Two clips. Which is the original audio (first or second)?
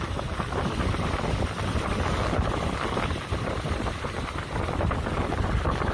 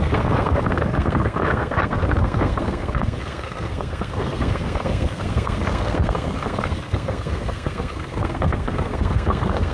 first